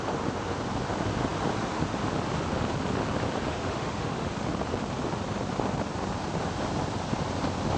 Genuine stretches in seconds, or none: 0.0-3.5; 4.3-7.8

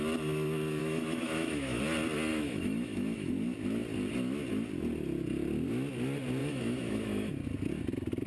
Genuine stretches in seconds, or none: 0.0-0.8; 1.8-2.3; 3.3-6.4; 7.3-8.3

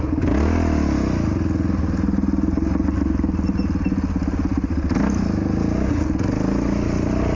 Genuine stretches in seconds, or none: 0.0-7.3

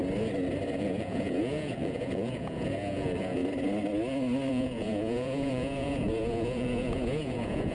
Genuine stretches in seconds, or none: 0.0-0.7; 3.4-4.5

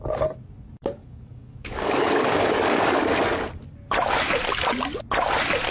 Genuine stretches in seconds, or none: 0.0-1.0; 3.0-5.7

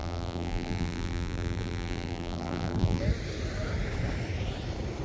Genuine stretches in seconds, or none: 3.0-5.0

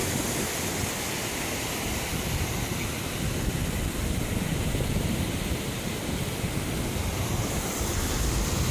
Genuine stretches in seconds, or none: 0.0-8.7

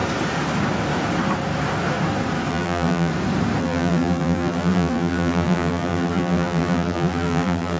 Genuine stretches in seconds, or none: 0.0-2.5; 3.1-3.6